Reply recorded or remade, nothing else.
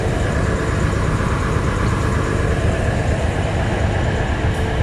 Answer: recorded